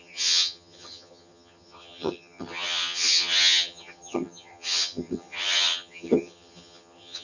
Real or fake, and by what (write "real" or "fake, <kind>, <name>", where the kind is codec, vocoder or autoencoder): fake, vocoder, HiFi-GAN